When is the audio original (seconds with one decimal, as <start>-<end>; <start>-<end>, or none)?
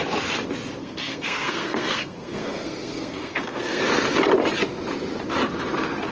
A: 0.0-0.8; 3.8-6.1